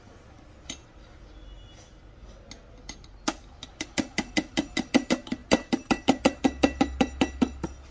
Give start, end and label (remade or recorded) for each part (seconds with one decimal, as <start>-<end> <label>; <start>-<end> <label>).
0.0-5.4 recorded; 5.4-6.2 remade; 6.2-7.9 recorded

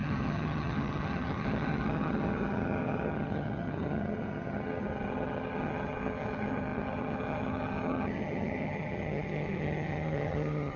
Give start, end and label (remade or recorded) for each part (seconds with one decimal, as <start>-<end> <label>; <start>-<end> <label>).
0.0-10.8 remade